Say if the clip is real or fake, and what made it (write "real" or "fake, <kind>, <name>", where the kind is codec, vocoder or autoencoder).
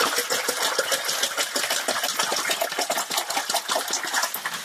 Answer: real